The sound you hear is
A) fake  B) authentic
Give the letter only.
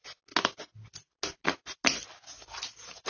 B